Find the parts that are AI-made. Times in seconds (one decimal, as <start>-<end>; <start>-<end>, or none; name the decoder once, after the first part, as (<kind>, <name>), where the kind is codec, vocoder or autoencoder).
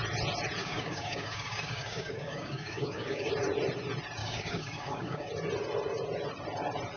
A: 0.6-3.3 (codec, DAC); 4.2-5.3